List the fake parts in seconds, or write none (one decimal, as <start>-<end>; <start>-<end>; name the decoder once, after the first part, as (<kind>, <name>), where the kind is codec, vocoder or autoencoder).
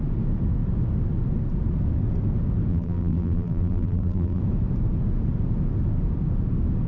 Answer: 2.7-4.4 (vocoder, BigVGAN v2)